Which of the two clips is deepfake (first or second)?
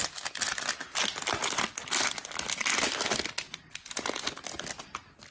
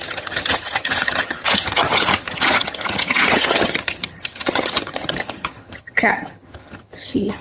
second